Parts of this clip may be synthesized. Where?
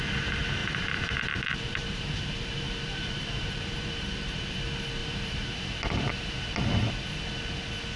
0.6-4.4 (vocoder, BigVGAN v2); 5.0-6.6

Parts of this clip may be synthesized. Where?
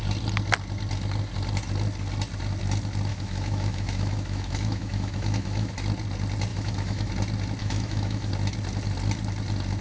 3.1-5.7 (autoencoder, DAC-VAE); 6.5-7.1; 7.6-8.3